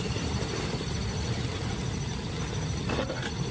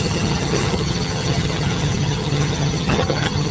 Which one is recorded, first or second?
first